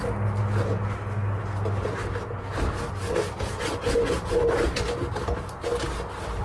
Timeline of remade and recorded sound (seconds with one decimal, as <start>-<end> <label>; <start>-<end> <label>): 0.0-6.4 recorded